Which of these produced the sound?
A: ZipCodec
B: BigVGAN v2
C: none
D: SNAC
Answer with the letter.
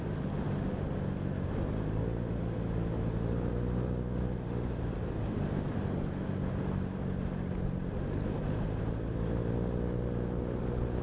C